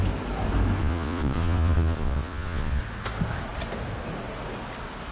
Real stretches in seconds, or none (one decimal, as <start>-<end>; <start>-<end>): 0.0-0.8; 2.8-5.1